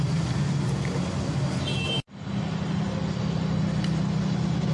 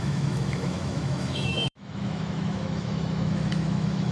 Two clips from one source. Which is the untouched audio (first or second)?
first